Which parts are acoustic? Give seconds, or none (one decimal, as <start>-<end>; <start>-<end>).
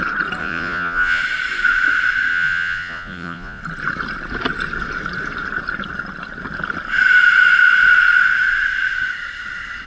0.0-0.4; 1.2-2.3; 3.6-9.9